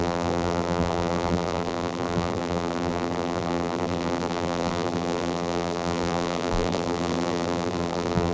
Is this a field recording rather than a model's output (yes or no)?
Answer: no